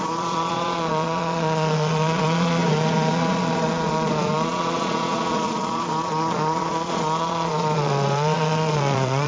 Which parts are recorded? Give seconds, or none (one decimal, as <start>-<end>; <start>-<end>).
none